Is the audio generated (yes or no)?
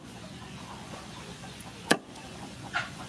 yes